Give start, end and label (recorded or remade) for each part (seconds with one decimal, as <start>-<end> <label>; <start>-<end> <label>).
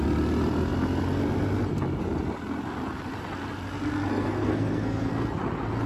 0.0-4.1 recorded; 4.1-5.1 remade; 5.1-5.9 recorded